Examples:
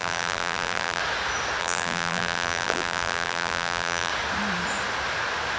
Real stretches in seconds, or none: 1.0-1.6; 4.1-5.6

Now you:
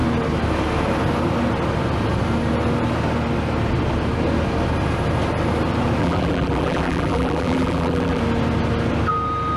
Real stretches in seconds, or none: 0.0-6.0; 8.2-9.6

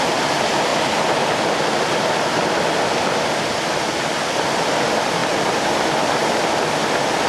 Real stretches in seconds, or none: 0.0-7.3

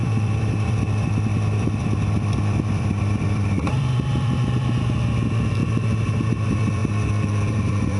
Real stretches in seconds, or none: 6.8-7.5

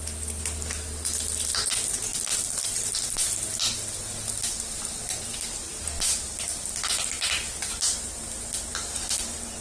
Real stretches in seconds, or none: 0.0-2.1; 2.7-9.6

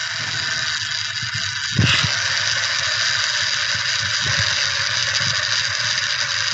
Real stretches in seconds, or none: 0.0-6.5

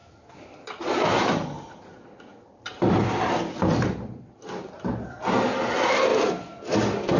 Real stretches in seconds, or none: 4.3-6.1